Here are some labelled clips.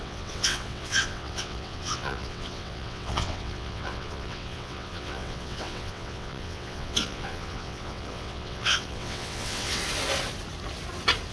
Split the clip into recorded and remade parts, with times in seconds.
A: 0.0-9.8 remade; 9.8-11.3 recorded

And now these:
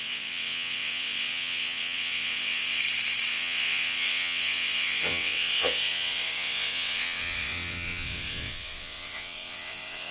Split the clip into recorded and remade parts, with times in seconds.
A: 0.0-2.8 remade; 2.8-3.3 recorded; 3.3-10.1 remade

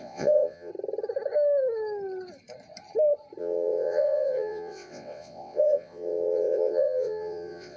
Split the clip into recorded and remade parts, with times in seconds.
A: 0.0-0.7 remade; 0.7-3.4 recorded; 3.4-7.8 remade